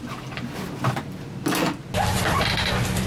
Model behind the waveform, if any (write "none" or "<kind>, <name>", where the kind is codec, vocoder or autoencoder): none